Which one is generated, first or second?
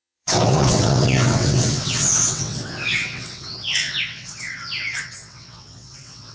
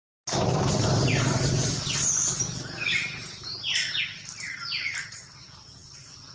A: first